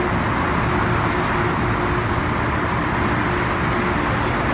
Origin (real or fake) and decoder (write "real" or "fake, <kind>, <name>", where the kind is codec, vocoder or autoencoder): real